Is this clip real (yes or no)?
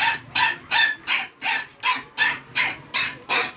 yes